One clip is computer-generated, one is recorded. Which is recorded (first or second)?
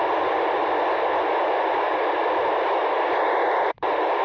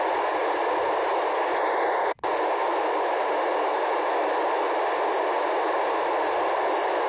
second